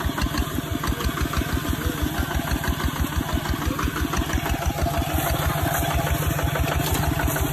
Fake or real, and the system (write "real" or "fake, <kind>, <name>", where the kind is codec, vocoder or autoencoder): real